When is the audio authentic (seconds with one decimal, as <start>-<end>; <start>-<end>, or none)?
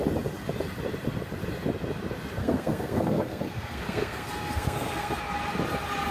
0.0-2.4; 5.2-6.1